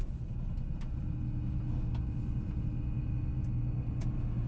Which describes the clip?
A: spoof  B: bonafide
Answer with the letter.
B